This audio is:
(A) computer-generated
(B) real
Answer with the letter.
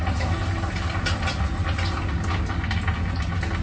B